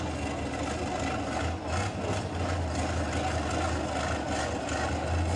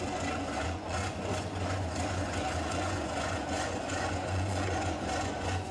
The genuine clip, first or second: first